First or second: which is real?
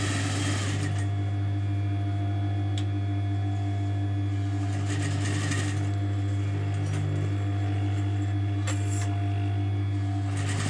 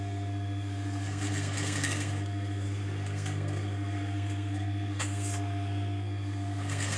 first